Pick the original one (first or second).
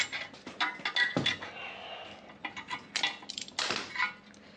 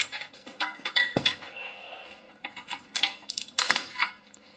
first